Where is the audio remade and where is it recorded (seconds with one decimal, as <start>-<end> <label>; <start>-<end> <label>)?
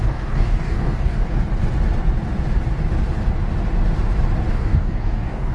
0.0-1.2 remade; 1.2-4.5 recorded; 4.5-5.5 remade